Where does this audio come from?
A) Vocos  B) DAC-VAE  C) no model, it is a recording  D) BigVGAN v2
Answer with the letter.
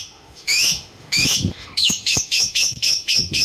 B